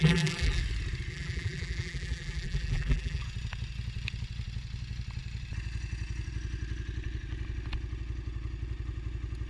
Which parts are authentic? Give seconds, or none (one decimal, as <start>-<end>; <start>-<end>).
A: 0.6-1.1; 3.2-9.5